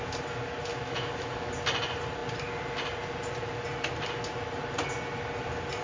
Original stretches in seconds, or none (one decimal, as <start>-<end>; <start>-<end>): 0.0-0.7; 1.5-5.8